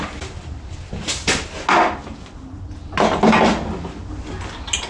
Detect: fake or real real